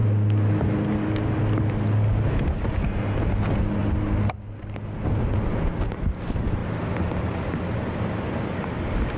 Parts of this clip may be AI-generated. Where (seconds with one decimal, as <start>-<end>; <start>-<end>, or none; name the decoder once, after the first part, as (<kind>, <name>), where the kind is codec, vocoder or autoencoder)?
none